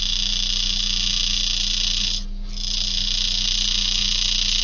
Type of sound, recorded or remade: recorded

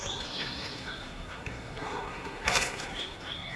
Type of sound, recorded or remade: remade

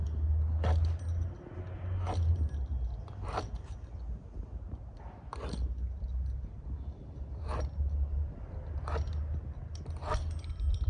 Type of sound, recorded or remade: recorded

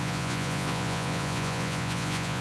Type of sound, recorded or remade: remade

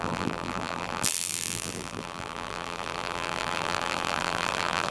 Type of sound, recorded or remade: remade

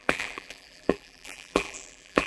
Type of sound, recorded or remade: remade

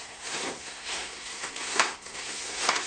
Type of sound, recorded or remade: remade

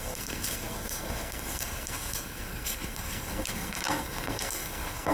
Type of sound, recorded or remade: remade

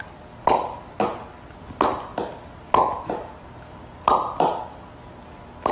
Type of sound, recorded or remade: recorded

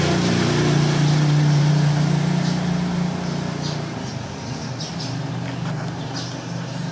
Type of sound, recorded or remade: recorded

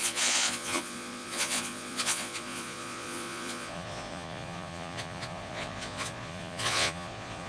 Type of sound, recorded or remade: remade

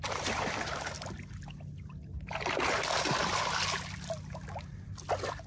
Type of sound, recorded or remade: recorded